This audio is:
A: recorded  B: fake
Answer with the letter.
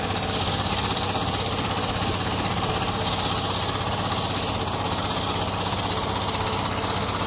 A